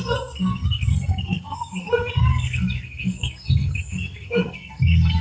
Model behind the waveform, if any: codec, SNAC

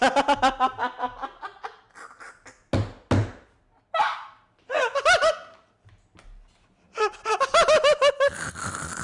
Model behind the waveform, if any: none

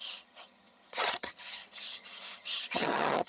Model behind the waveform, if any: vocoder, HiFi-GAN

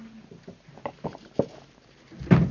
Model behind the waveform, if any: none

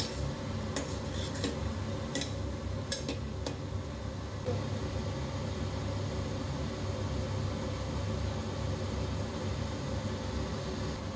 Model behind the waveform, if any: none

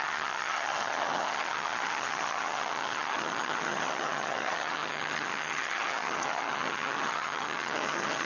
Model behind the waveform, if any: vocoder, HiFi-GAN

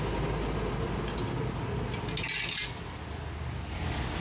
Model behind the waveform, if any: none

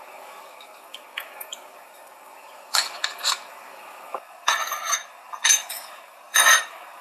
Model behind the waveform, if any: codec, DAC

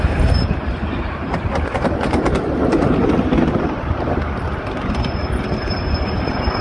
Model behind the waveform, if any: none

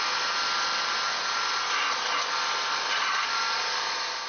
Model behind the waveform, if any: none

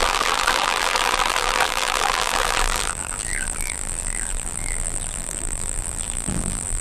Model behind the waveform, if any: vocoder, BigVGAN v2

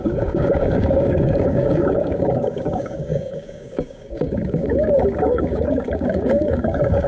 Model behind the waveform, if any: codec, DAC